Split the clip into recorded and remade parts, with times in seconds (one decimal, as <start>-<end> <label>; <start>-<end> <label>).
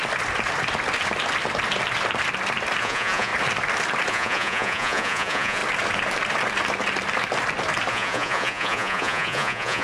0.0-2.8 recorded; 2.8-3.3 remade; 3.3-4.1 recorded; 4.1-5.6 remade; 5.6-7.9 recorded; 7.9-9.8 remade